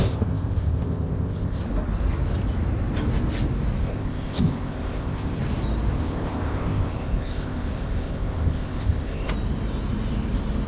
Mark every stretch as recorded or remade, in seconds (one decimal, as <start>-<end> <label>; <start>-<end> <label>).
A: 0.0-1.6 remade; 1.6-3.8 recorded; 3.8-5.4 remade; 5.4-6.0 recorded; 6.0-9.3 remade; 9.3-10.7 recorded